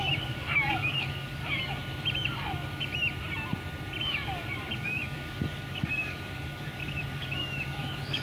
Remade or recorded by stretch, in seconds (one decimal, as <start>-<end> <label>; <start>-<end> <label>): 0.0-1.8 remade; 1.8-2.3 recorded; 2.3-2.9 remade; 2.9-4.0 recorded; 4.0-8.2 remade